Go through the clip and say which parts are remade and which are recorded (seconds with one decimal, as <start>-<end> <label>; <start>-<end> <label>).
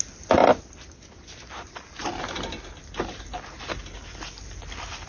0.0-5.1 recorded